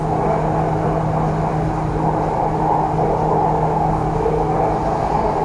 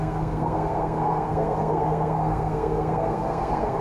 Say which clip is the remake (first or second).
second